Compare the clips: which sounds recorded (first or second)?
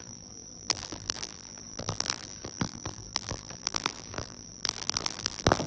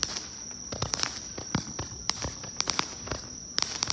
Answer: second